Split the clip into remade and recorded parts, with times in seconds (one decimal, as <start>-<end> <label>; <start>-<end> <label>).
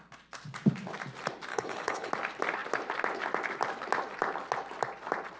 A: 0.0-1.5 recorded; 1.5-2.1 remade; 2.1-5.4 recorded